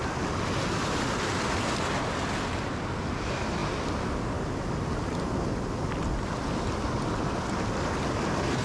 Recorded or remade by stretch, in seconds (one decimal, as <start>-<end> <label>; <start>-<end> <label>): 0.0-8.6 recorded